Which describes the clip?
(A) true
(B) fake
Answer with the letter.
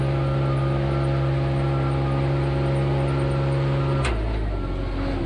A